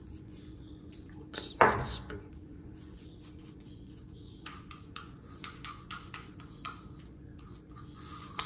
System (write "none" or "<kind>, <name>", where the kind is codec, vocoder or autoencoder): vocoder, Vocos